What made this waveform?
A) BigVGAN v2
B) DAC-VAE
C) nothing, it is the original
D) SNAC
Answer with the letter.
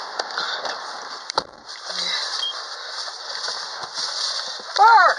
A